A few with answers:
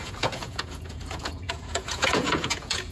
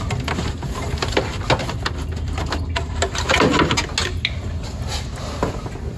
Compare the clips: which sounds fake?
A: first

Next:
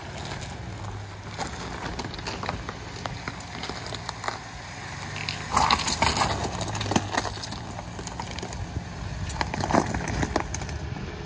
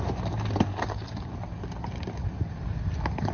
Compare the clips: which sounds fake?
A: second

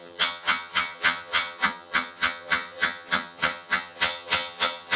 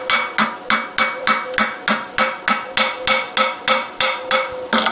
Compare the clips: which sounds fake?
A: first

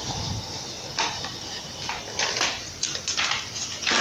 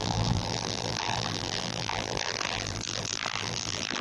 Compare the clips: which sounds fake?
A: second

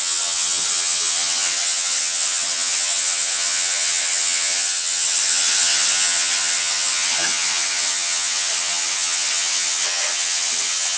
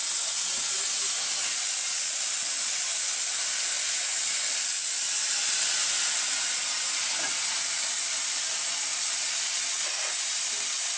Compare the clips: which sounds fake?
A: first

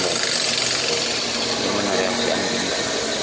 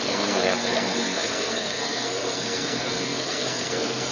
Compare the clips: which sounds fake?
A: second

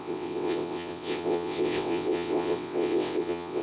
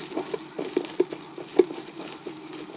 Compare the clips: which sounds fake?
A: first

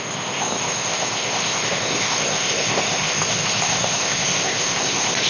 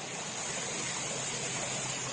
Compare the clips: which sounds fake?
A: first